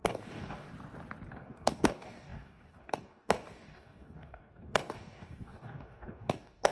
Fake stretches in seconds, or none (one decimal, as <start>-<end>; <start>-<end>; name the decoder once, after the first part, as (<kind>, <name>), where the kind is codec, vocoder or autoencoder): 0.0-0.7 (codec, DAC); 1.3-6.7